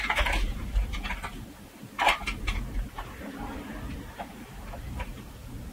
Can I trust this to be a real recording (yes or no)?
no